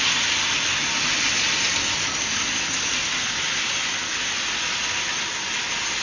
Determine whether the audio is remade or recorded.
recorded